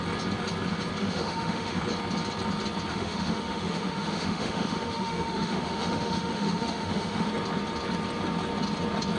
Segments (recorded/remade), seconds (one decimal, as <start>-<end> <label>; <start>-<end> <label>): 0.0-1.0 recorded; 1.0-1.8 remade; 1.8-2.9 recorded; 2.9-7.3 remade; 7.3-9.2 recorded